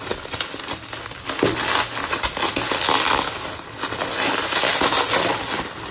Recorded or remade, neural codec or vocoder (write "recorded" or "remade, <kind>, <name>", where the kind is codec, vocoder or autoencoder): recorded